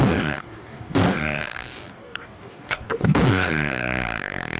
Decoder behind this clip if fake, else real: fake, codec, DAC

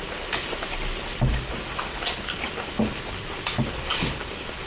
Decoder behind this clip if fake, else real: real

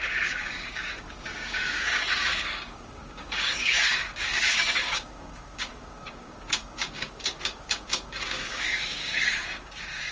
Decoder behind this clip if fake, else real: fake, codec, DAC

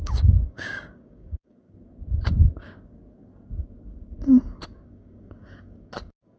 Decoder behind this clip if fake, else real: fake, codec, DAC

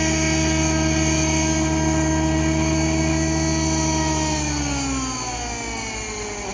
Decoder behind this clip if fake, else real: real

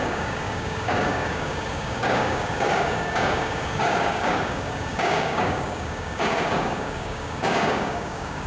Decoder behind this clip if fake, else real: fake, codec, DAC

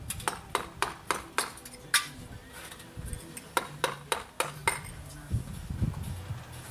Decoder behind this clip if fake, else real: real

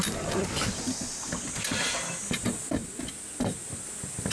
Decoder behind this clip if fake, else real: real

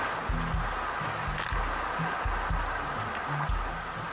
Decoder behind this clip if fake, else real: real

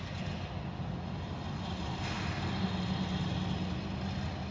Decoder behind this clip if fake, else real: real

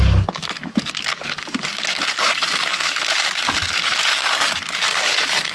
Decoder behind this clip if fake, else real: fake, codec, DAC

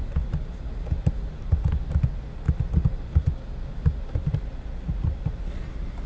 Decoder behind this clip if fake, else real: real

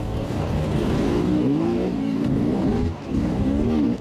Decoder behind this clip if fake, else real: fake, codec, DAC